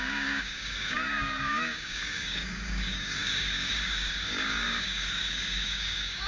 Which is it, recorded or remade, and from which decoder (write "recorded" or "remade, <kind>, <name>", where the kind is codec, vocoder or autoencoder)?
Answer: remade, codec, DAC